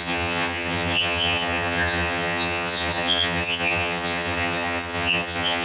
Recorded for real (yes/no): no